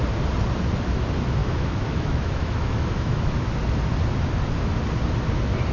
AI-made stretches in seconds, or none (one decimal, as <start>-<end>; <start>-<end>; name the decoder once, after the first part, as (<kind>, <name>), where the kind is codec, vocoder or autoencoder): 1.4-3.5 (autoencoder, DAC-VAE)